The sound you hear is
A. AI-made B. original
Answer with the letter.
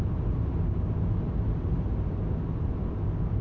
B